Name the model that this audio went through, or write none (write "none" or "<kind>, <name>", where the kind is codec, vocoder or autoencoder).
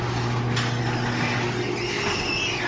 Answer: none